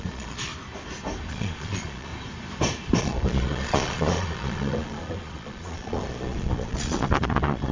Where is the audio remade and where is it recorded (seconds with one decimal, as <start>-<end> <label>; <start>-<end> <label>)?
0.0-0.5 remade; 0.5-1.3 recorded; 1.3-2.1 remade; 2.1-3.0 recorded; 3.0-7.7 remade